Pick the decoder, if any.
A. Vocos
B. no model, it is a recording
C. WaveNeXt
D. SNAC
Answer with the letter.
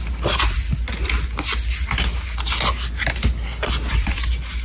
B